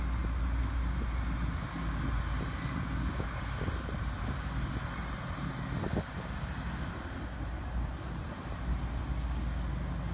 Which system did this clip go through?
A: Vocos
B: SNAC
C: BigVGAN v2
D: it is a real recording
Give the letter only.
D